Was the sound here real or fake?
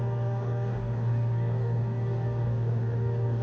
fake